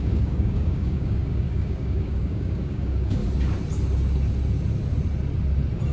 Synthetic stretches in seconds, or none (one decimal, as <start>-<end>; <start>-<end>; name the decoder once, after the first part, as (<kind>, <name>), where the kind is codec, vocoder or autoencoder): 0.0-3.2 (codec, DAC)